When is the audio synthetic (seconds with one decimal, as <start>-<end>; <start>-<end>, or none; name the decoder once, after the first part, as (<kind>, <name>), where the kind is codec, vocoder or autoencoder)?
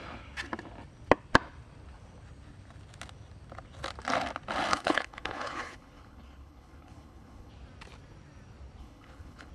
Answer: 4.7-7.5 (codec, HILCodec); 8.8-9.5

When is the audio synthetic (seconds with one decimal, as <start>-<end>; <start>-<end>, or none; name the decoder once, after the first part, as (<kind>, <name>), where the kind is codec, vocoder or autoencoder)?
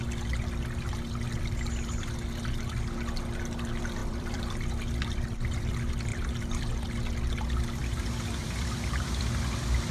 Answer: 4.0-5.6 (vocoder, BigVGAN v2); 6.1-6.7; 8.4-9.3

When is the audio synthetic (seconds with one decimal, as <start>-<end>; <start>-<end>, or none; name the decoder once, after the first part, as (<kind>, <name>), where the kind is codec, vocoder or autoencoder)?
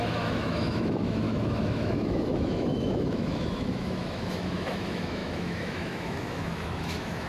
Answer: 0.0-7.3 (autoencoder, DAC-VAE)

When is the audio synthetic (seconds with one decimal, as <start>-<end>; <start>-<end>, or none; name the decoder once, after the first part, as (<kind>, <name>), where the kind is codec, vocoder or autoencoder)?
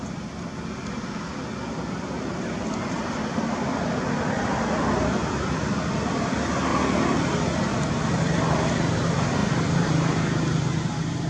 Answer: none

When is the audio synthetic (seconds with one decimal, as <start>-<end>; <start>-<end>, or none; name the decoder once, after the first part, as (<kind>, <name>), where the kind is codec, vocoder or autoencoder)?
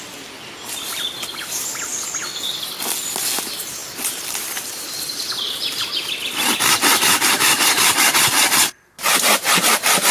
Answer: none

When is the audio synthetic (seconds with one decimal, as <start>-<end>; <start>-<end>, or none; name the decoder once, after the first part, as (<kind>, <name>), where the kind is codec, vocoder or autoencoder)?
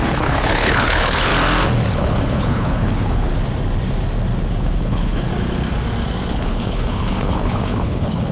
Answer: 0.0-1.3 (codec, HILCodec); 1.9-3.3; 4.5-5.3; 6.3-8.3